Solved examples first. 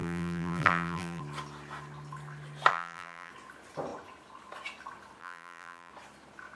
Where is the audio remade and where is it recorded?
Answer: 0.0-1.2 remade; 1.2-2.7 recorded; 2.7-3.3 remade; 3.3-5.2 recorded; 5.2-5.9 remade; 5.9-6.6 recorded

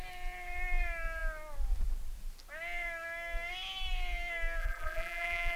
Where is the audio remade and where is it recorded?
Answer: 0.0-4.6 recorded; 4.6-5.6 remade